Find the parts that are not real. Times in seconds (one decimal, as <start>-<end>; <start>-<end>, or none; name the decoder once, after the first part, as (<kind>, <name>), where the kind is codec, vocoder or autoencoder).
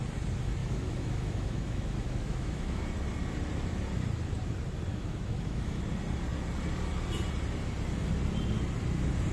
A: 0.6-2.8 (autoencoder, DAC-VAE); 4.9-5.8